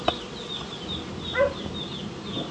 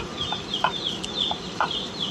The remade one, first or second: second